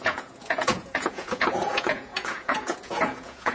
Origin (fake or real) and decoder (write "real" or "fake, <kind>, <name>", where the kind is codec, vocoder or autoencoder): fake, vocoder, Vocos